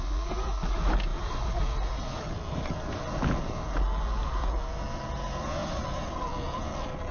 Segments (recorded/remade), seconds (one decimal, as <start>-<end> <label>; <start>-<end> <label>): 0.0-1.1 recorded; 1.1-2.7 remade; 2.7-5.6 recorded; 5.6-6.2 remade; 6.2-7.1 recorded